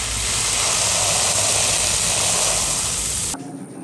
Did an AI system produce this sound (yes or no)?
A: no